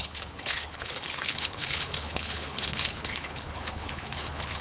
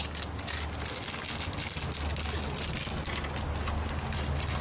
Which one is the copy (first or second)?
first